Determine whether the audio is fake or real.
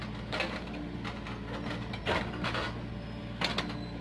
real